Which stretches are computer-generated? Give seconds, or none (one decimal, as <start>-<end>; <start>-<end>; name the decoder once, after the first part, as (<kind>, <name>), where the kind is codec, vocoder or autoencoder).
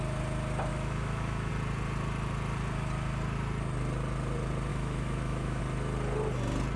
0.7-1.5 (autoencoder, DAC-VAE); 4.7-5.6